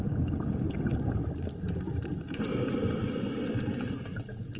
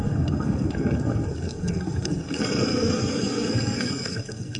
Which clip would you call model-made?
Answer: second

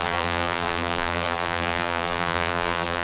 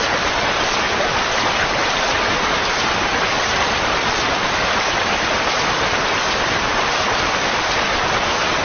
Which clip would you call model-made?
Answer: first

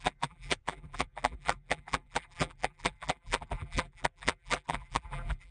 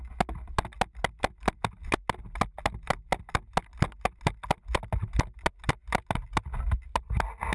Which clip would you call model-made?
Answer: first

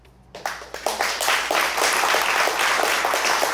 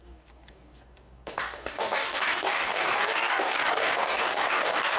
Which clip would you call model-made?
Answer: second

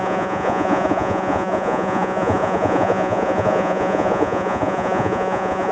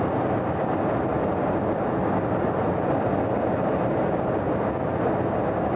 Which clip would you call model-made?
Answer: first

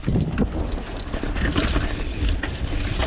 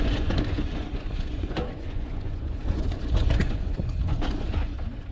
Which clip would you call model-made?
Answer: second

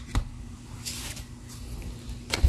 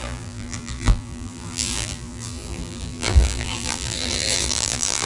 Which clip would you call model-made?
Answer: second